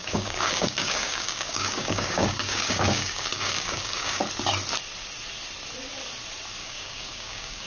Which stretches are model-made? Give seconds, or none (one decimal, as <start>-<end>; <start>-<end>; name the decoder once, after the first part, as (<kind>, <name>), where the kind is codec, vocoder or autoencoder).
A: 0.0-4.2 (codec, DAC); 6.6-7.7